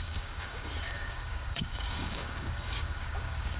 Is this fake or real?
fake